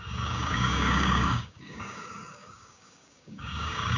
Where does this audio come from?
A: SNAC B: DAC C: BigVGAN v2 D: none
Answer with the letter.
B